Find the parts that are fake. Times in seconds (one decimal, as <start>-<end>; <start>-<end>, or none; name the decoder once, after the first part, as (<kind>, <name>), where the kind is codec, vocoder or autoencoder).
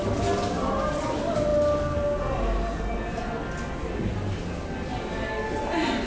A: none